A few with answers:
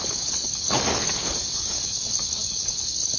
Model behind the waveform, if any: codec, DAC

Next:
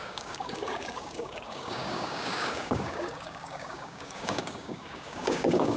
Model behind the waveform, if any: codec, DAC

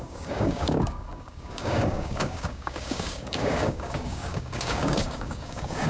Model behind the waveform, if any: codec, DAC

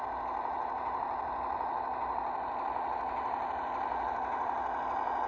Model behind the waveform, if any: none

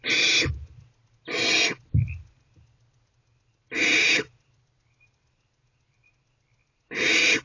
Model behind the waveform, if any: none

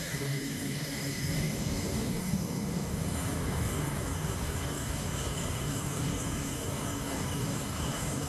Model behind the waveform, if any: codec, DAC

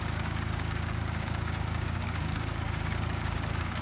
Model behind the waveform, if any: codec, DAC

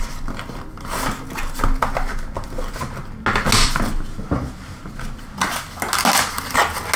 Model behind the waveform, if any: none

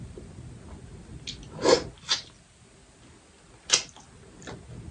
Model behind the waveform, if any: none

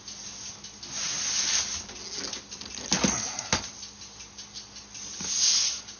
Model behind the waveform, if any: none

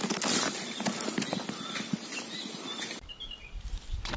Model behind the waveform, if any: none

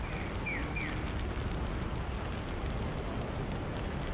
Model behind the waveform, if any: none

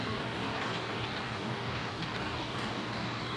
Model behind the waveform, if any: codec, DAC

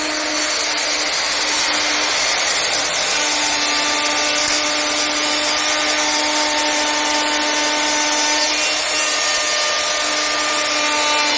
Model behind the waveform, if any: none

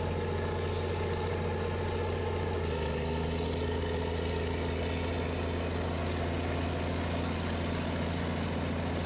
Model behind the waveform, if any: none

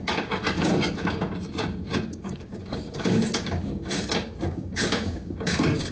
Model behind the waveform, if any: codec, DAC